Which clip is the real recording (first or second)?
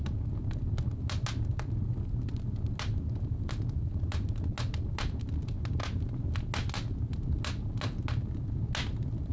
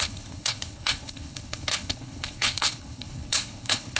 first